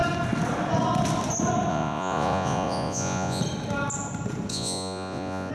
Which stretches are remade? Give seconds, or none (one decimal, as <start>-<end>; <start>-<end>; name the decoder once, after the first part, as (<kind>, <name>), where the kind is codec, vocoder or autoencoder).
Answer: 1.7-3.4 (vocoder, Vocos); 4.5-5.5